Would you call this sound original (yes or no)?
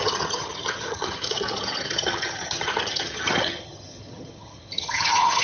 no